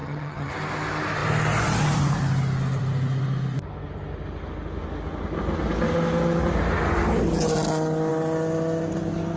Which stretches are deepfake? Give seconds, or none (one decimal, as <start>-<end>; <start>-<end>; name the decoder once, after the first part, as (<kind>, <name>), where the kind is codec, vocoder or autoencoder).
0.0-0.5 (vocoder, HiFi-GAN)

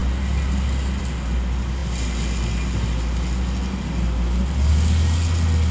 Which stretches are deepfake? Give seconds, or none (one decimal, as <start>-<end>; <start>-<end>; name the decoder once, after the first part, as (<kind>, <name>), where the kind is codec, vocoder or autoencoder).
none

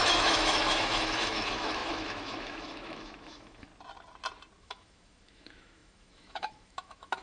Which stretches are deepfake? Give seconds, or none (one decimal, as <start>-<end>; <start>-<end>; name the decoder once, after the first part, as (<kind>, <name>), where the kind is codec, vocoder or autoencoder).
0.0-3.7 (autoencoder, DAC-VAE); 4.6-7.2